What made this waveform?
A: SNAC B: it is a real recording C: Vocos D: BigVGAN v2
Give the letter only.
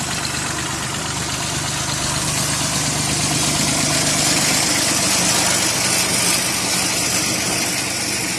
B